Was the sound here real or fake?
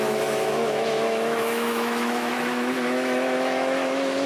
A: fake